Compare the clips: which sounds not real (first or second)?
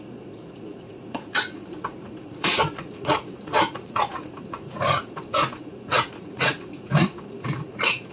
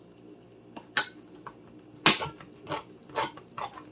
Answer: first